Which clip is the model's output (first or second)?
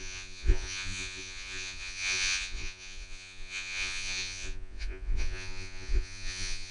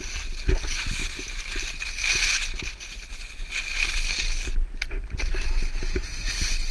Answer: first